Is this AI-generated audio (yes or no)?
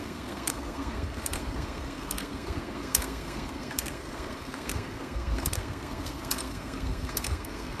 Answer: yes